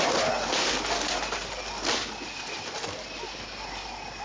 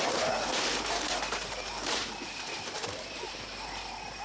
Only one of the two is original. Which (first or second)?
first